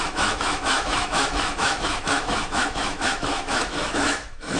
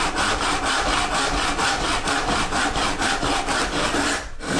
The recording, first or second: second